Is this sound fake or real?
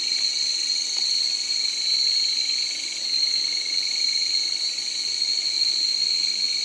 real